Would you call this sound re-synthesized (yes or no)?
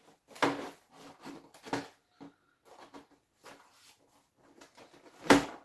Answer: no